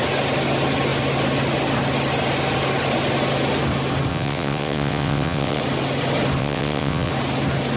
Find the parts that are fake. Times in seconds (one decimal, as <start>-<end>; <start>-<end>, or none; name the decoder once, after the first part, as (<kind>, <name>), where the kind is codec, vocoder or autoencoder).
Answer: 4.1-5.6 (vocoder, WaveNeXt); 6.4-7.1